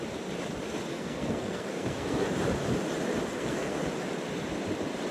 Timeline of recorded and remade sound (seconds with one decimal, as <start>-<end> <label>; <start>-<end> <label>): 0.0-0.9 recorded; 0.9-2.3 remade; 2.3-3.3 recorded; 3.3-3.8 remade; 3.8-5.1 recorded